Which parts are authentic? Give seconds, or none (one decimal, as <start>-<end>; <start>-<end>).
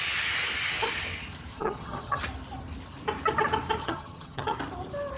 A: 0.0-1.5; 2.2-3.8; 4.6-5.2